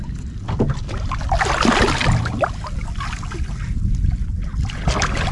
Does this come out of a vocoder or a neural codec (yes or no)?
no